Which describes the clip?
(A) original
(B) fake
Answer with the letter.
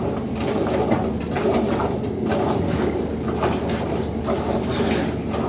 A